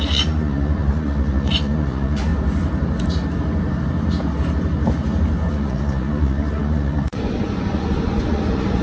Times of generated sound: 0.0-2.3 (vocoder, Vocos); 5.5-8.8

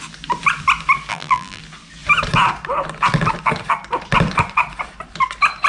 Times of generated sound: 1.1-1.6 (vocoder, BigVGAN v2)